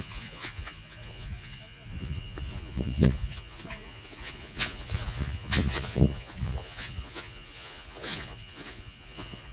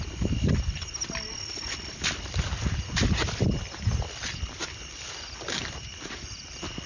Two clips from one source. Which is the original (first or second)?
second